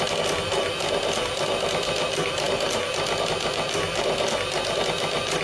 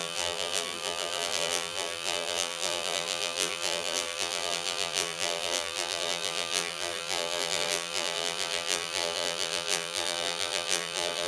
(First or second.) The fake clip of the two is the second